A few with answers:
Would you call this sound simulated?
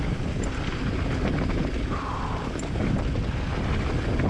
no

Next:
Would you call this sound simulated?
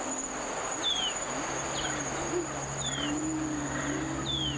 no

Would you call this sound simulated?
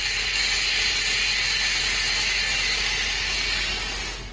no